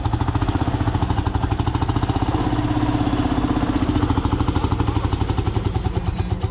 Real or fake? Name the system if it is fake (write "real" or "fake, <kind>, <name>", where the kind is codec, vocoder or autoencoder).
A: real